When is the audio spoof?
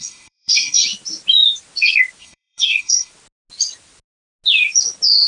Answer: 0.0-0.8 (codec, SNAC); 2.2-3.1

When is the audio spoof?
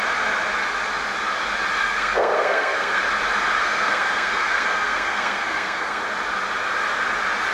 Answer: 1.8-3.0 (codec, SNAC); 3.6-6.0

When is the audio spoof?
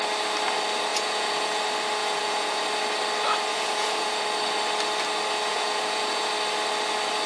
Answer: 0.9-1.6 (vocoder, Vocos); 2.0-2.6; 3.5-4.2; 5.5-6.3